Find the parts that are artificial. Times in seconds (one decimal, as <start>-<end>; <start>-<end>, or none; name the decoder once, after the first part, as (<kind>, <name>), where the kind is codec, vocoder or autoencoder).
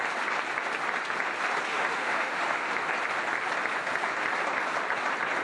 1.7-2.7 (autoencoder, DAC-VAE)